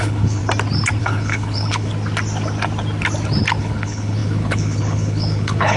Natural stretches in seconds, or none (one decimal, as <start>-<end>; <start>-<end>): 0.4-1.0; 1.9-3.6